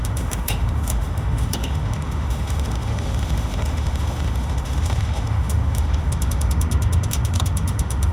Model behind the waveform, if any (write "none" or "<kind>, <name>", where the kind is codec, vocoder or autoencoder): autoencoder, DAC-VAE